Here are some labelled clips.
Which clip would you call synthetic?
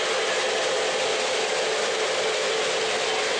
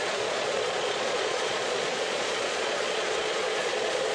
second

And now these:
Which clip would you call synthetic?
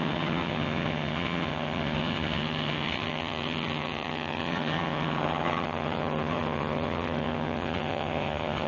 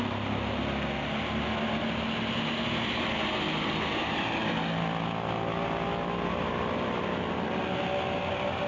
first